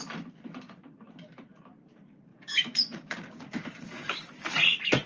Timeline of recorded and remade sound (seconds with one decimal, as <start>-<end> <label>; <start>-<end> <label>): 0.0-2.3 recorded; 2.3-4.3 remade; 4.3-5.1 recorded